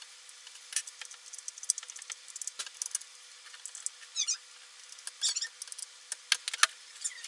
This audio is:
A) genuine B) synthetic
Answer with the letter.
A